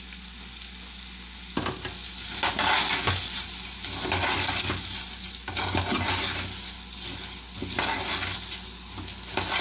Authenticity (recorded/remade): recorded